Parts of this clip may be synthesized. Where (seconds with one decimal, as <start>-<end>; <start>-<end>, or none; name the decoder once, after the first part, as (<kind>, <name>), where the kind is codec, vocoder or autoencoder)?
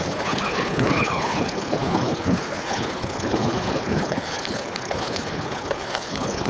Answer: 0.0-6.5 (codec, HILCodec)